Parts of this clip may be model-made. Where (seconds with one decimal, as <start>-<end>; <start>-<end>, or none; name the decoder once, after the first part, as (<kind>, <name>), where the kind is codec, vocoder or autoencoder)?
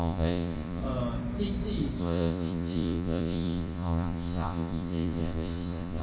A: 0.0-0.8 (vocoder, Vocos); 2.0-6.0